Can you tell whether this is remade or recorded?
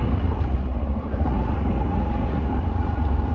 remade